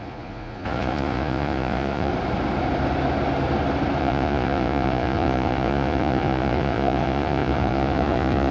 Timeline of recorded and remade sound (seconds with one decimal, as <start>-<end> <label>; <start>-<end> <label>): 0.0-2.1 remade; 2.1-4.0 recorded; 4.0-8.5 remade